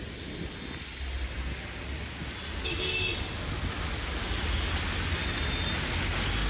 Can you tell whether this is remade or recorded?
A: recorded